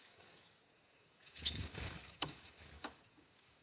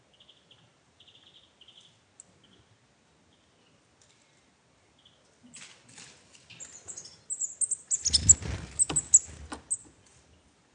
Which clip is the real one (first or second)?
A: second